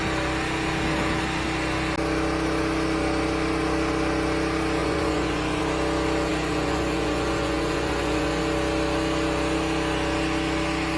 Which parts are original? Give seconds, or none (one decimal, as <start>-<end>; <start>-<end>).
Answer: 0.0-4.8; 5.6-6.3; 8.4-11.0